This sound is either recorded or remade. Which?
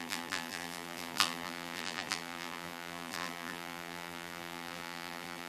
remade